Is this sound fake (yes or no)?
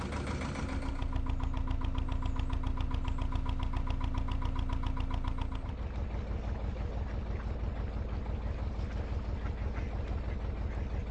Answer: no